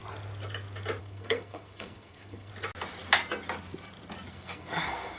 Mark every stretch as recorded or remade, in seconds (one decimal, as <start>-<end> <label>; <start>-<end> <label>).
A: 0.0-1.0 recorded; 1.0-2.5 remade; 2.5-4.3 recorded; 4.3-5.2 remade